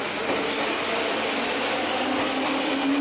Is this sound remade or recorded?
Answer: recorded